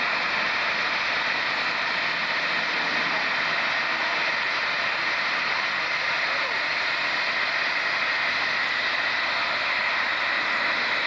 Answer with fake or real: real